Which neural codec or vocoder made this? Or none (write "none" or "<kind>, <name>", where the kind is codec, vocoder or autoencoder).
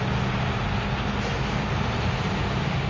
none